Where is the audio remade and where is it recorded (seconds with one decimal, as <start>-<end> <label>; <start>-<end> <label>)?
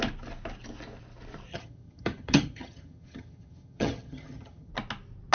0.0-1.5 recorded; 1.5-4.7 remade; 4.7-5.3 recorded